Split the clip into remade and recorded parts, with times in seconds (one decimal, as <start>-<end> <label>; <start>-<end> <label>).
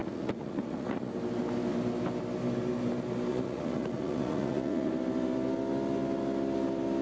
0.0-1.1 remade; 1.1-3.3 recorded; 3.3-4.9 remade; 4.9-7.0 recorded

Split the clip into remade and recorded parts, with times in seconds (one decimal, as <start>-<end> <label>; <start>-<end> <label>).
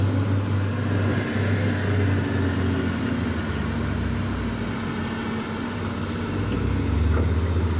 0.0-5.2 recorded; 5.2-6.2 remade; 6.2-7.8 recorded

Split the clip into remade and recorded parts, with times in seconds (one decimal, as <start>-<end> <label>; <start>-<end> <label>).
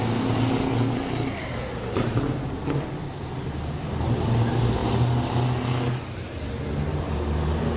0.0-7.8 recorded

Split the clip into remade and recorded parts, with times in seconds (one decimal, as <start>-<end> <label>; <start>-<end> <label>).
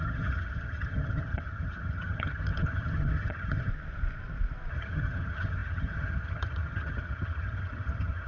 0.0-3.7 remade; 3.7-4.7 recorded; 4.7-8.3 remade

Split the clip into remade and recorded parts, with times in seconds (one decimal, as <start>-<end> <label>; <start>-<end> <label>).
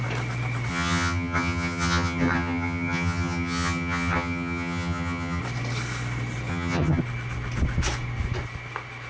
0.0-0.7 recorded; 0.7-5.4 remade; 5.4-6.5 recorded; 6.5-7.0 remade; 7.0-9.1 recorded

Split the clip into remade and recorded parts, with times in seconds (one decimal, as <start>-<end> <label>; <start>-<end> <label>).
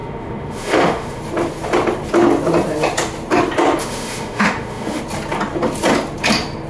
0.0-1.2 remade; 1.2-3.8 recorded; 3.8-5.0 remade; 5.0-6.7 recorded